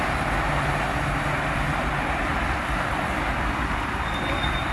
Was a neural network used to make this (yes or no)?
no